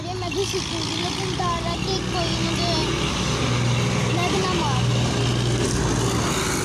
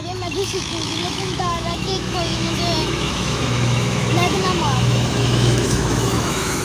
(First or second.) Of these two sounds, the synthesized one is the second